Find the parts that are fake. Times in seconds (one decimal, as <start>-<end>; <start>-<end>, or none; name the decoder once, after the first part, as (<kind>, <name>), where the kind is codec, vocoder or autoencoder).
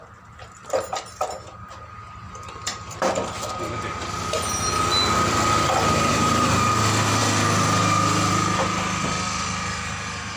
6.1-6.8 (vocoder, BigVGAN v2)